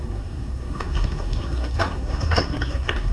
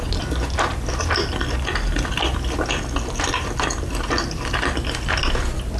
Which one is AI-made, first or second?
first